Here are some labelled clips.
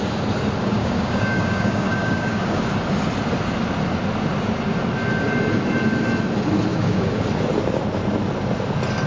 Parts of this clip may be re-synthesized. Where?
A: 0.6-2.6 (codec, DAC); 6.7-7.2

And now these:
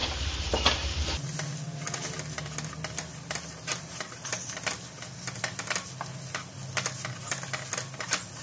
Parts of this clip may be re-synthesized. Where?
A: 0.0-1.0 (vocoder, BigVGAN v2)

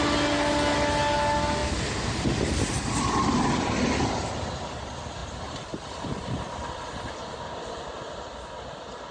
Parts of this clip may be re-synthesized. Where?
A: none

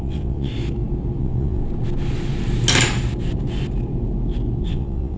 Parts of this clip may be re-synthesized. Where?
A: 0.0-0.5 (vocoder, WaveNeXt); 1.2-1.6; 4.7-5.2

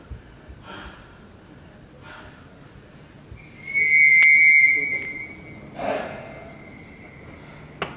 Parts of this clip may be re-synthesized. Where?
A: none

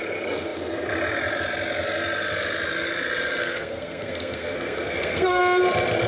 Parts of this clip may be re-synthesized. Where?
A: 3.4-5.4 (codec, SNAC)

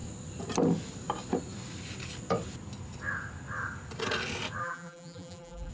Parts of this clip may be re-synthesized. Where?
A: 4.6-5.7 (vocoder, BigVGAN v2)